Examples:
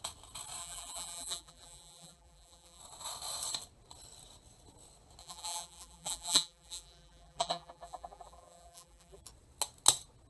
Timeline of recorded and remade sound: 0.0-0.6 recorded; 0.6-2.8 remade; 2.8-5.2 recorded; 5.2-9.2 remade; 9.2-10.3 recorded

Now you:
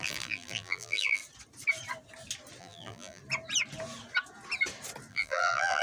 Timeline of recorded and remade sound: 0.0-1.2 remade; 1.2-2.6 recorded; 2.6-3.2 remade; 3.2-5.1 recorded; 5.1-5.8 remade

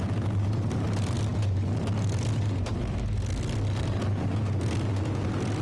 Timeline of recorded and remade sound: 0.0-5.6 recorded

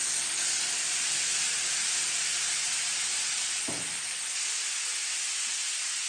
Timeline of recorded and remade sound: 0.0-6.1 recorded

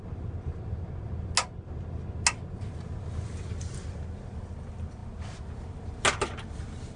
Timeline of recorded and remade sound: 0.0-7.0 recorded